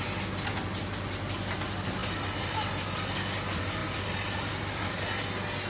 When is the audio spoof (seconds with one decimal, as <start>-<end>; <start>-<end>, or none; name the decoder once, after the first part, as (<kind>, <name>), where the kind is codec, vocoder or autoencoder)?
2.0-2.8 (vocoder, BigVGAN v2); 3.8-5.2